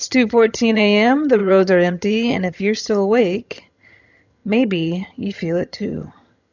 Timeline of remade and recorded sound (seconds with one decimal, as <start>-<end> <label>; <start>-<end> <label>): 0.0-6.5 remade